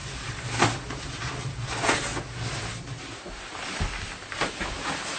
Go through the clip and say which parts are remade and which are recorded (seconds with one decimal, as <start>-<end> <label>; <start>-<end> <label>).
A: 0.0-5.2 recorded